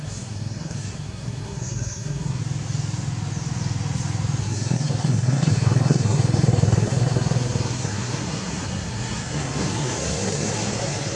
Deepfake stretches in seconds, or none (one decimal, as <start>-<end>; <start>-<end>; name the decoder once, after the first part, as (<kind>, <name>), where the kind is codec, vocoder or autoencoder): 0.0-2.4 (codec, SNAC); 4.4-11.2